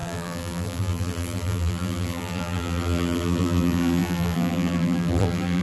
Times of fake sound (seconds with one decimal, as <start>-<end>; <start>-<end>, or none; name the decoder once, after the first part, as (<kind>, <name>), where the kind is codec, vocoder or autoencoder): 0.0-5.6 (vocoder, BigVGAN v2)

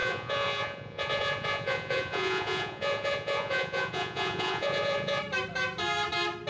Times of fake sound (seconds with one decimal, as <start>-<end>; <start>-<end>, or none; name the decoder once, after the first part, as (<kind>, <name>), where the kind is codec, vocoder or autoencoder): 0.0-5.2 (vocoder, Vocos)

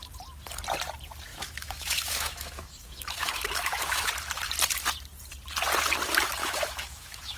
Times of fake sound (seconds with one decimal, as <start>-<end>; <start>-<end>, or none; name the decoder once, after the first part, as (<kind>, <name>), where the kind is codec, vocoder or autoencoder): 1.3-4.1 (autoencoder, DAC-VAE); 6.4-7.4

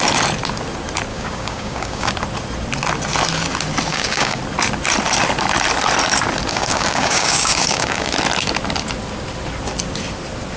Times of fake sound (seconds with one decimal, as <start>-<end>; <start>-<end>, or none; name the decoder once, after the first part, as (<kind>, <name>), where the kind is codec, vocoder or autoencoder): 1.1-2.1 (codec, DAC); 3.9-4.4; 6.5-8.1

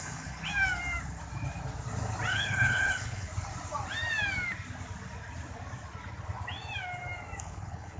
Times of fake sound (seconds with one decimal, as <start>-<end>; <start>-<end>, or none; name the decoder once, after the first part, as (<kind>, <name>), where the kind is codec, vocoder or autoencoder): 0.0-0.5 (codec, HILCodec); 2.3-3.3; 7.4-8.0